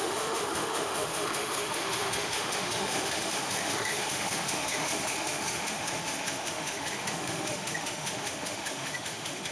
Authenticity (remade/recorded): remade